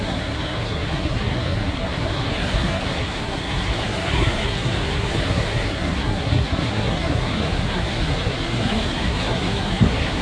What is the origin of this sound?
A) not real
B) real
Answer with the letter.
A